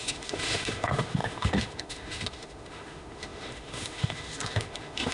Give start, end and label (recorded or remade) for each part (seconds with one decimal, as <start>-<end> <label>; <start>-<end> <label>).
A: 0.0-5.1 remade